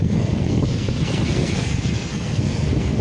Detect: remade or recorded remade